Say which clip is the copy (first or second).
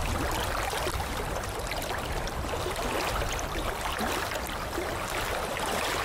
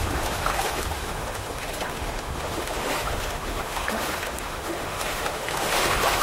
second